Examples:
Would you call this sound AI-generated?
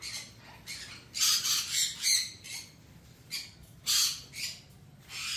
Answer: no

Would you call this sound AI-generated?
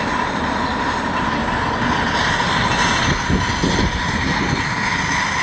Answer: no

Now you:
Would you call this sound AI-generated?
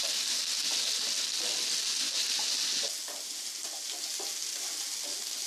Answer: no